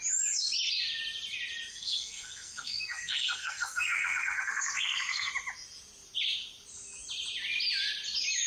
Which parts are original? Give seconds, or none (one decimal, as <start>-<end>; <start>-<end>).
0.0-1.7; 5.3-8.5